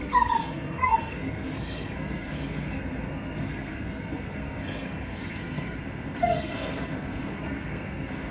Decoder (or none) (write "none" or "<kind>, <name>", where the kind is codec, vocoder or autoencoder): codec, SNAC